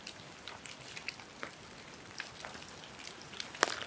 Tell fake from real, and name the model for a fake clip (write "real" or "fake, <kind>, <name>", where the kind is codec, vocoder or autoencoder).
fake, vocoder, BigVGAN v2